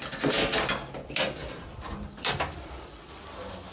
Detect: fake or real real